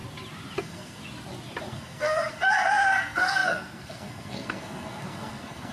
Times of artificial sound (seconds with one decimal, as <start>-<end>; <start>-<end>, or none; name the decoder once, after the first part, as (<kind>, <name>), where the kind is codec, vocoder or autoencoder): 0.6-1.0 (codec, SNAC); 1.7-5.7